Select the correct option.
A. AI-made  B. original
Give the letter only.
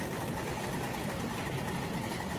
B